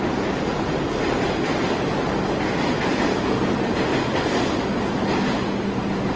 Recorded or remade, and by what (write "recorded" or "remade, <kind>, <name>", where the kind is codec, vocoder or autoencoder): recorded